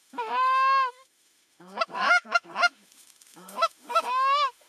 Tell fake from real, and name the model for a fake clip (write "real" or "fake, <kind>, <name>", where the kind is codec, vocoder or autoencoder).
fake, autoencoder, DAC-VAE